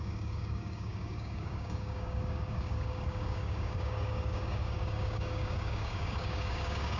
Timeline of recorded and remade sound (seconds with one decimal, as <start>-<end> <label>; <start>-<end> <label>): 0.0-7.0 remade